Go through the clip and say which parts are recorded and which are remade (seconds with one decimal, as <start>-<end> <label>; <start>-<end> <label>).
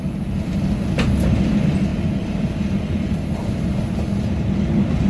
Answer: 0.0-5.1 recorded